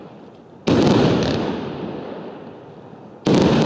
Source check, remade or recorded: recorded